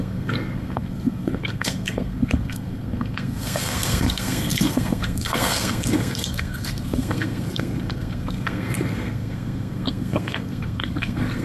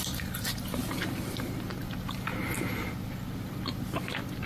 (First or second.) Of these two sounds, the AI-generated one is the first